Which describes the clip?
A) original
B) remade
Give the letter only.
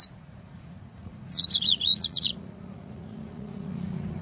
B